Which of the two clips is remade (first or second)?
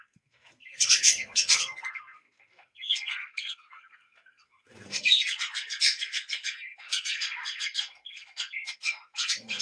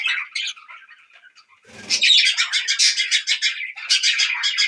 first